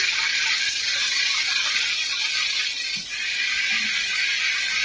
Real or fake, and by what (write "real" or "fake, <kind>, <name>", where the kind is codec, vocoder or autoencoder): real